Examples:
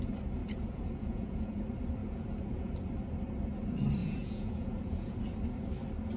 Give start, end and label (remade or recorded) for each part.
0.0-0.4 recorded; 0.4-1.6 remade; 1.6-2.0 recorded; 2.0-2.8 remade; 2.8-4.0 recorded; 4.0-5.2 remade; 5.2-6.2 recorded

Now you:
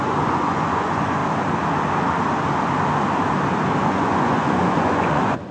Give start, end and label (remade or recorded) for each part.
0.0-1.2 remade; 1.2-3.8 recorded; 3.8-5.5 remade

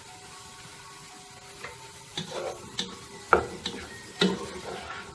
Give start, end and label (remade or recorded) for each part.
0.0-5.1 recorded

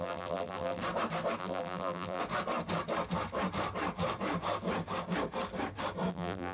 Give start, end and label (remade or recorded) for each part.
0.0-0.8 remade; 0.8-1.4 recorded; 1.4-2.2 remade; 2.2-6.1 recorded; 6.1-6.5 remade

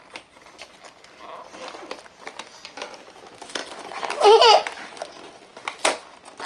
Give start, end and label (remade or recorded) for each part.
0.0-6.5 recorded

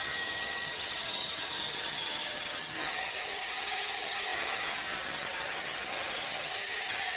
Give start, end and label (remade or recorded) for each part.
0.0-7.2 remade

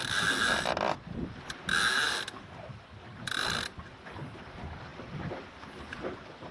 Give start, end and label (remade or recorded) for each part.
0.0-6.5 recorded